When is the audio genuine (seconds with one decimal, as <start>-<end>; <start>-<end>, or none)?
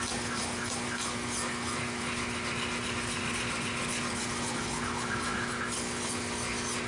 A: 0.0-6.9